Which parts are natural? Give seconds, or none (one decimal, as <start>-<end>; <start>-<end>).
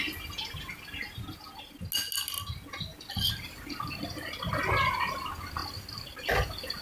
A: 0.0-2.9; 4.6-5.6